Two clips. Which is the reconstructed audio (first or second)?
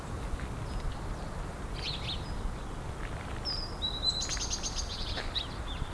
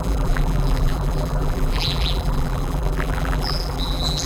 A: second